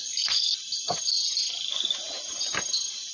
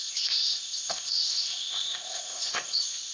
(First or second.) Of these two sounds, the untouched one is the first